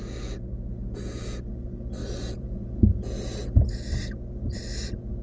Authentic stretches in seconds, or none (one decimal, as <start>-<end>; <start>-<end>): 1.4-2.0; 3.6-5.2